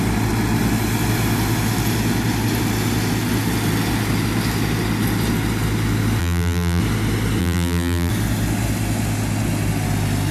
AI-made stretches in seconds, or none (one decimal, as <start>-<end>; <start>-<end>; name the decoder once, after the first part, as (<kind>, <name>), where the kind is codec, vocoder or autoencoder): 6.2-6.8 (vocoder, BigVGAN v2); 7.4-8.1